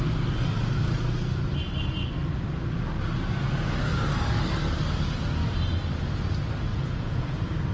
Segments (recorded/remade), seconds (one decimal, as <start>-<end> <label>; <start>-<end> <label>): 0.0-6.7 recorded; 6.7-7.3 remade; 7.3-7.7 recorded